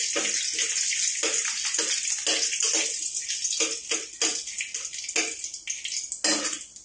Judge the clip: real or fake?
real